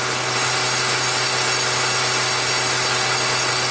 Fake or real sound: real